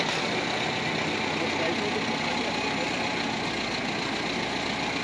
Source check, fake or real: real